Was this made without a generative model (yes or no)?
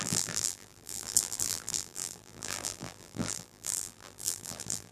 no